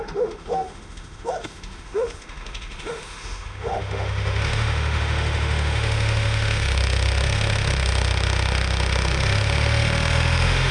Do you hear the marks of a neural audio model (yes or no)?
yes